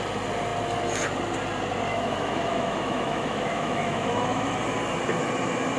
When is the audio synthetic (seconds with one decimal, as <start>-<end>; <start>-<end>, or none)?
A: 1.9-4.6